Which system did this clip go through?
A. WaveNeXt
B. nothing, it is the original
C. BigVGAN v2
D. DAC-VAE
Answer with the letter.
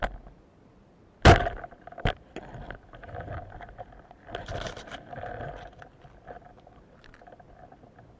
B